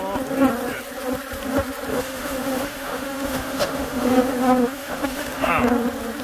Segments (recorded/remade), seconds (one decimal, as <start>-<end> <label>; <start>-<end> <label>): 0.0-1.9 recorded; 1.9-5.5 remade; 5.5-6.2 recorded